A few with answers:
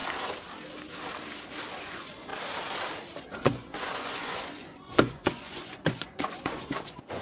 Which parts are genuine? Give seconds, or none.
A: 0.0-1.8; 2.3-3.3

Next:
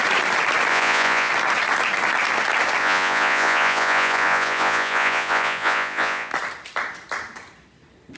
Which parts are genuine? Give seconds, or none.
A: 0.0-0.7; 1.3-2.8; 6.3-8.2

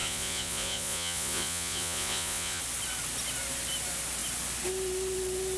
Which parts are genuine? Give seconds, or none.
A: 2.6-5.6

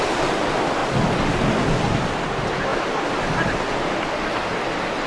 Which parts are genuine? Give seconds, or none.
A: 0.0-5.1

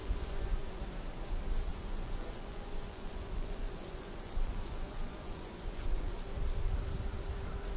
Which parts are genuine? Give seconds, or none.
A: 0.5-1.7; 6.1-7.8

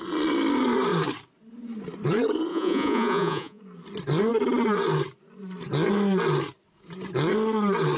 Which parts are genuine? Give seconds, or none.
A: 0.0-2.5; 3.6-8.0

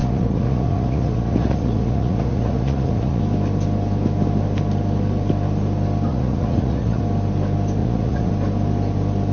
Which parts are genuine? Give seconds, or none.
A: 3.2-6.1; 7.0-7.8; 8.3-9.3